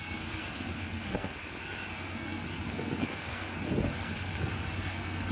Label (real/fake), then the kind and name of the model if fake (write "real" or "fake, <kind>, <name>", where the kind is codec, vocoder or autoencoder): fake, codec, SNAC